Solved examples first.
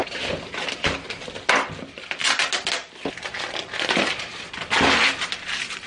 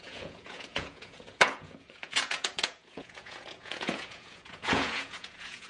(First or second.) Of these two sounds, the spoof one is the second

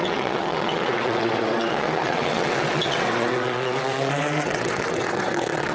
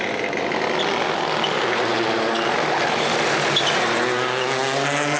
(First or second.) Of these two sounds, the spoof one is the first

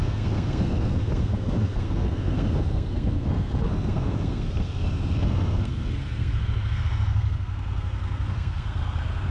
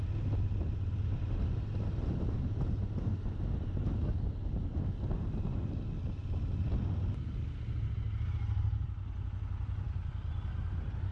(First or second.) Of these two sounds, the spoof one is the first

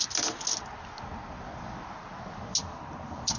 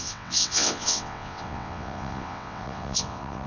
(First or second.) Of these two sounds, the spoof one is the second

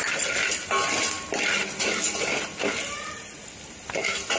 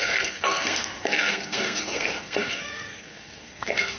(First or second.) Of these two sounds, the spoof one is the second